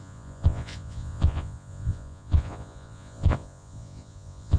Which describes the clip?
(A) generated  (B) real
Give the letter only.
A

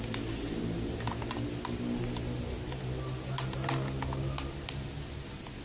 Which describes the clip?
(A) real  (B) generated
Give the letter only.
A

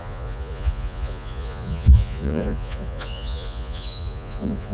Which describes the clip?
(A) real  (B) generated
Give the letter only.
B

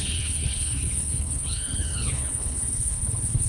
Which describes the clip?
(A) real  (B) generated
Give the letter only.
B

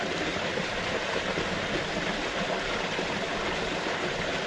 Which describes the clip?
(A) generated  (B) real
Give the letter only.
B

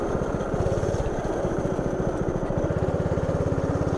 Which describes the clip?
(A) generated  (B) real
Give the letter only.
B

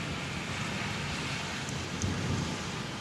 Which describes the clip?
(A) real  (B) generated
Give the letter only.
A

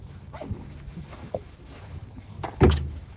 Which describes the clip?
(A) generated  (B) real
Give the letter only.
A